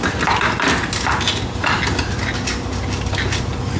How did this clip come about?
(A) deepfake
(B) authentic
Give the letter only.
B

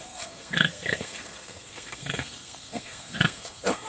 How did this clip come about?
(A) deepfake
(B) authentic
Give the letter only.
A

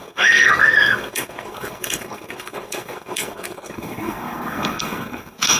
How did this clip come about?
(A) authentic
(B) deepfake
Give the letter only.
B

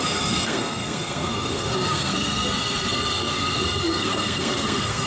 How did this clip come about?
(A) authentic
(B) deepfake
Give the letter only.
B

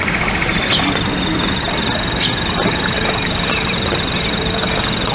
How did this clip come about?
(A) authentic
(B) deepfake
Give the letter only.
A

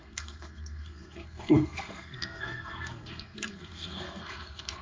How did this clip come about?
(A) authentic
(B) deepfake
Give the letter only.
B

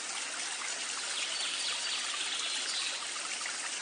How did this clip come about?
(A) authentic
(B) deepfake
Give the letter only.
A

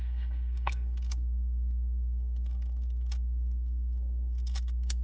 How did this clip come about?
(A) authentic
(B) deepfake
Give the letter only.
B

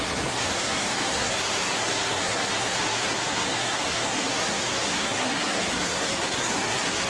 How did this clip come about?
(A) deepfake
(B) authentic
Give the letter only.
A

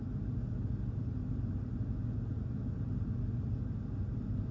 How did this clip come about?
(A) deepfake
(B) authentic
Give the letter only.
B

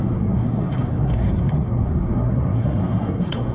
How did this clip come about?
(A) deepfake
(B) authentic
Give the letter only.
A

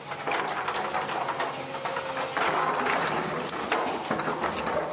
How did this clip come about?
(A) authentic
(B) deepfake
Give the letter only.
A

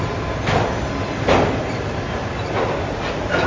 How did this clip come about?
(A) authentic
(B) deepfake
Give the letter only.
A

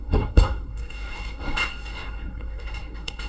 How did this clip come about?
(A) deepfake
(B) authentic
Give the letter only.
A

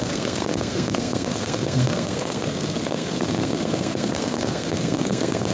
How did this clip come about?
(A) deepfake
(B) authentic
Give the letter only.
A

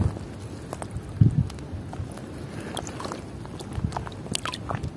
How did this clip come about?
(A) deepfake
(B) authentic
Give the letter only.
B